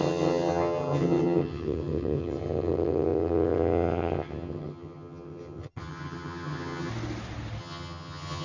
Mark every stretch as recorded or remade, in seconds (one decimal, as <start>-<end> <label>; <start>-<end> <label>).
0.0-6.9 remade; 6.9-7.6 recorded; 7.6-8.4 remade